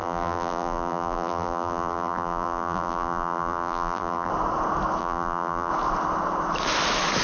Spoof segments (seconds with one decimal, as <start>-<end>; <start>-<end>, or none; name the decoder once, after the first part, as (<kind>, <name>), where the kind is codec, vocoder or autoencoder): 0.0-4.3 (vocoder, BigVGAN v2); 5.0-5.7